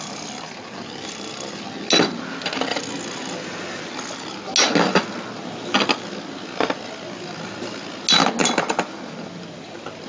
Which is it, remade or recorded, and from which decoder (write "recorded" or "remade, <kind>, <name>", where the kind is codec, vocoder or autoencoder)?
recorded